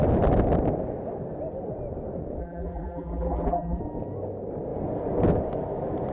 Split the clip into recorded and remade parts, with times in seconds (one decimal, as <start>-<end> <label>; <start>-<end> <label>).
0.0-2.4 recorded; 2.4-3.8 remade; 3.8-6.1 recorded